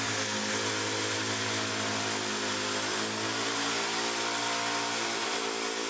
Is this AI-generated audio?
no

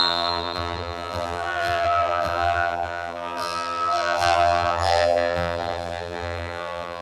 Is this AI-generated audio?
yes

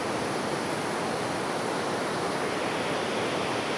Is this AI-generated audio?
no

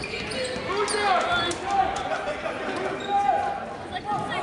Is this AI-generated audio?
no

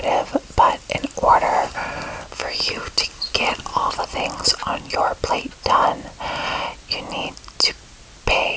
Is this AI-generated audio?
no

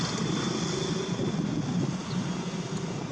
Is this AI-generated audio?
no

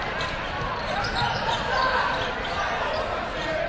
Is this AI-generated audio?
yes